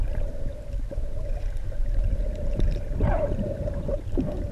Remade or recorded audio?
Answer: remade